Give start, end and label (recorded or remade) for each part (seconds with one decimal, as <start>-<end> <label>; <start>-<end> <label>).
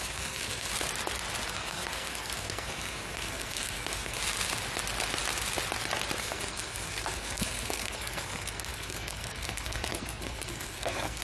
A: 0.0-0.7 remade; 0.7-1.5 recorded; 1.5-4.2 remade; 4.2-6.2 recorded; 6.2-11.2 remade